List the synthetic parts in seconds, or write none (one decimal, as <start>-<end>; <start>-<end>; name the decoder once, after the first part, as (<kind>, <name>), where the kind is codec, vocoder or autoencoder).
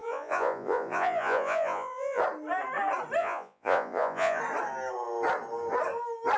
0.0-2.2 (vocoder, Vocos); 3.2-4.4